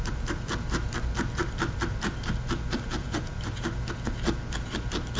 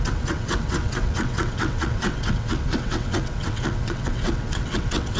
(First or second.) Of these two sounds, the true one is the first